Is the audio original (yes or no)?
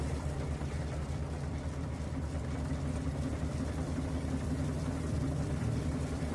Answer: yes